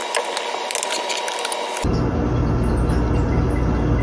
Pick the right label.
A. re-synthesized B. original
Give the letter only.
B